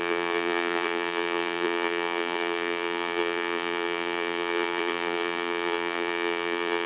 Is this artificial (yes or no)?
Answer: yes